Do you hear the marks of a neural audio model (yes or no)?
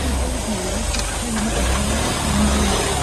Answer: no